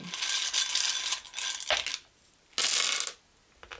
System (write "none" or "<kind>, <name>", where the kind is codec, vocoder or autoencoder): none